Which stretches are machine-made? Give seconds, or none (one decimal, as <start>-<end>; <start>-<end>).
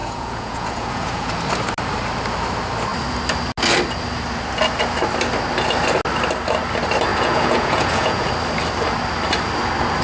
0.0-1.3; 7.1-8.3